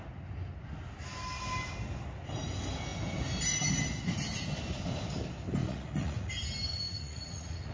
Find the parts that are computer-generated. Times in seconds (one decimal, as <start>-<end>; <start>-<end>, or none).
5.6-6.3; 6.7-7.7